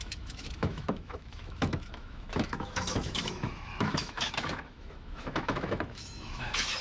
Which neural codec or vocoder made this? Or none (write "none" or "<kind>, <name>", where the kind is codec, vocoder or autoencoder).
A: autoencoder, DAC-VAE